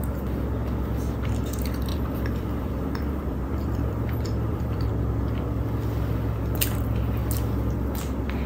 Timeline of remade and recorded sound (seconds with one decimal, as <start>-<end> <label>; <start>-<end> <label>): 0.0-1.9 recorded; 1.9-4.9 remade; 4.9-8.5 recorded